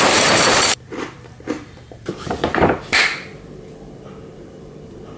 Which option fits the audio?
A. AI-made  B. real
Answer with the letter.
A